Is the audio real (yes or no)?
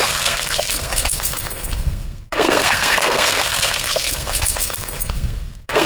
no